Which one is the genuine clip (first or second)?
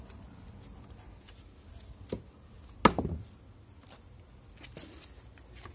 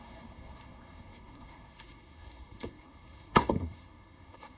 first